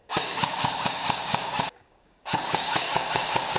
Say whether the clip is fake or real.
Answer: fake